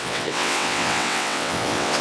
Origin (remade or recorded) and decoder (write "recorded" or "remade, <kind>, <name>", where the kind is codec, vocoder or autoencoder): remade, vocoder, WaveNeXt